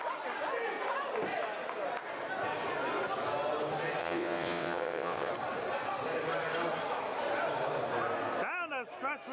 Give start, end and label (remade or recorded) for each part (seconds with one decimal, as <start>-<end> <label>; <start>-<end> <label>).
0.0-4.0 recorded; 4.0-5.3 remade; 5.3-9.3 recorded